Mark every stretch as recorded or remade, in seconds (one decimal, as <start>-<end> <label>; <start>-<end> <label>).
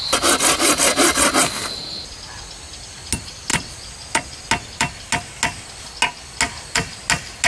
0.0-7.5 recorded